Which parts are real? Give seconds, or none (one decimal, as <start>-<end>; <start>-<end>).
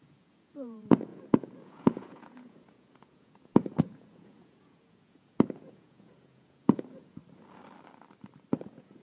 7.2-8.6